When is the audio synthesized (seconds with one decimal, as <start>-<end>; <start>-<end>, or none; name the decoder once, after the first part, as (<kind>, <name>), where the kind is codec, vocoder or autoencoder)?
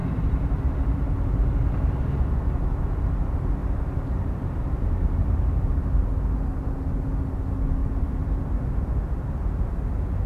0.0-2.2 (vocoder, BigVGAN v2); 3.6-6.1; 7.8-8.5